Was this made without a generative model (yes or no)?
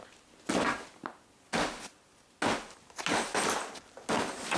yes